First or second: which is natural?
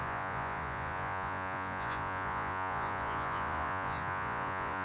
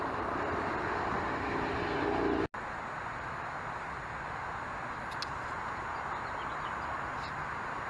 second